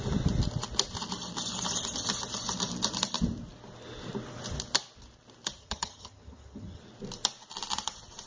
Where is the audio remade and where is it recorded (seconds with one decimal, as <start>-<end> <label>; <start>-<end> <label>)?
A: 0.0-5.6 recorded; 5.6-6.8 remade; 6.8-8.3 recorded